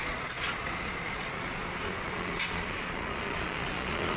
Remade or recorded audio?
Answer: remade